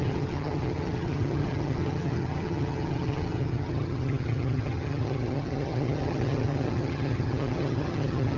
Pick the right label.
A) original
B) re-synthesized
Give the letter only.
B